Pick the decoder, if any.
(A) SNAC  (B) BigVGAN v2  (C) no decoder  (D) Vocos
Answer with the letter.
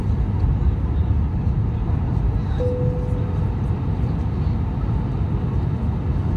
C